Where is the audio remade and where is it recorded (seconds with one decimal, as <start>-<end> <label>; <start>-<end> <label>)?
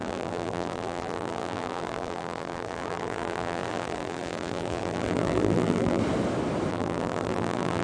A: 0.0-6.0 remade; 6.0-6.7 recorded; 6.7-7.8 remade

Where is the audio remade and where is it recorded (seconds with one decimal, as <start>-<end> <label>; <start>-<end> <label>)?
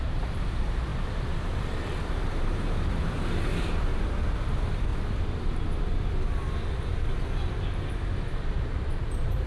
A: 0.0-3.9 remade; 3.9-4.5 recorded; 4.5-4.9 remade; 4.9-8.5 recorded; 8.5-9.5 remade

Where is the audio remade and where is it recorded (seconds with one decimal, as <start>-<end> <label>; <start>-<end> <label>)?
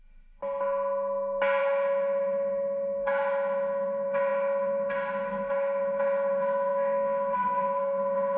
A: 0.0-0.4 remade; 0.4-1.6 recorded; 1.6-8.4 remade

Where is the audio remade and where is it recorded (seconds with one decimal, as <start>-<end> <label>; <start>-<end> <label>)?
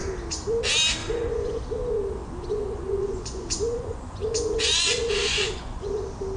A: 0.0-1.0 recorded; 1.0-1.6 remade; 1.6-2.2 recorded; 2.2-6.0 remade; 6.0-6.4 recorded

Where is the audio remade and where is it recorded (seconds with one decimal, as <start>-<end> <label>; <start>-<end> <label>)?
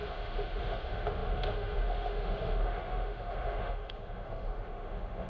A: 0.0-5.3 remade